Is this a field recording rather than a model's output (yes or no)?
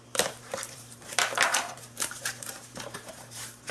no